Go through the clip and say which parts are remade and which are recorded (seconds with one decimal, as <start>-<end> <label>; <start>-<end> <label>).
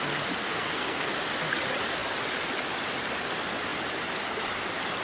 0.0-0.4 recorded; 0.4-1.1 remade; 1.1-5.0 recorded